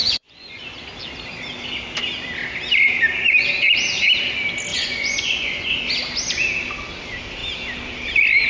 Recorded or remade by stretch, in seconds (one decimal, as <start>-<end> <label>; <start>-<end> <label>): 0.0-0.6 remade; 0.6-4.7 recorded; 4.7-5.9 remade; 5.9-8.5 recorded